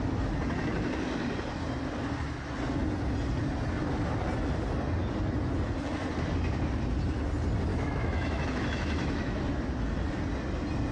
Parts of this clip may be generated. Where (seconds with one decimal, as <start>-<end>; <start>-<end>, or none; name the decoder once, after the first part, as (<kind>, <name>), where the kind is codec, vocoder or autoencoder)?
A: 7.7-9.4 (autoencoder, DAC-VAE)

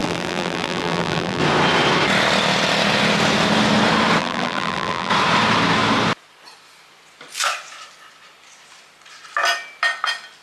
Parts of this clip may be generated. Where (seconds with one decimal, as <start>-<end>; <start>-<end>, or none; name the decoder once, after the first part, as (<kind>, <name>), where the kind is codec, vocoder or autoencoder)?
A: 0.0-1.4 (vocoder, BigVGAN v2); 4.2-5.1